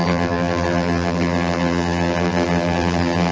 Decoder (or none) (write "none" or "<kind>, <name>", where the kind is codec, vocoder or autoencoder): vocoder, BigVGAN v2